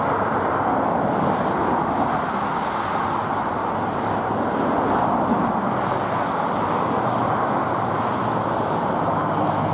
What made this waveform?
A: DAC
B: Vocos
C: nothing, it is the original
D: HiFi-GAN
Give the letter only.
C